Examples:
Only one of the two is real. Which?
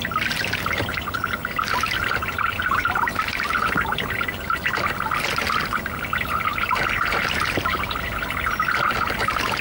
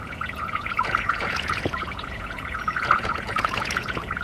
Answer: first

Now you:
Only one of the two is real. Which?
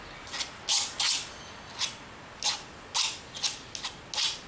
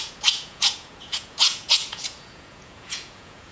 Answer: first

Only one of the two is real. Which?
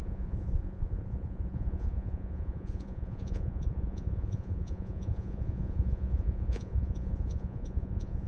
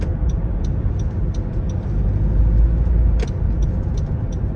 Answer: second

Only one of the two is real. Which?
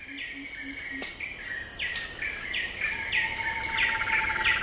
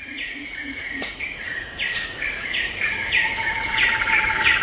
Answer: first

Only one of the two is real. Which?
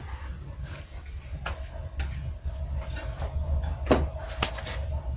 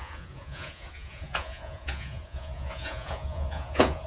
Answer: first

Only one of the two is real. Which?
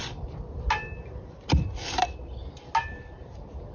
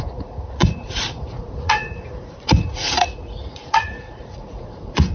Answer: first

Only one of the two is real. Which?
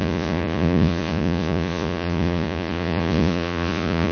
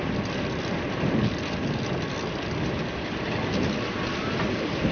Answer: second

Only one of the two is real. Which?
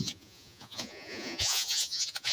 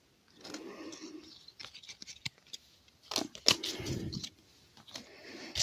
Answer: second